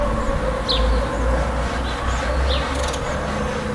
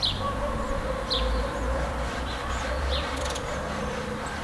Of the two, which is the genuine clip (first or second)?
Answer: first